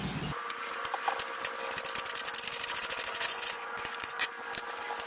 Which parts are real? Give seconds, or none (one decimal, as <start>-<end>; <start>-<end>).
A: 0.0-3.1; 4.3-5.1